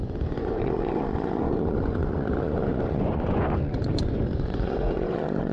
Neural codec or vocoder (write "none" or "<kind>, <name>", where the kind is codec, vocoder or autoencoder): vocoder, Vocos